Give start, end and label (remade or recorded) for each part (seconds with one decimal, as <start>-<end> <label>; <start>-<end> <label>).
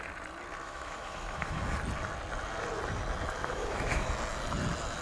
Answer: 0.0-0.6 recorded; 0.6-1.6 remade; 1.6-3.4 recorded; 3.4-4.1 remade; 4.1-5.0 recorded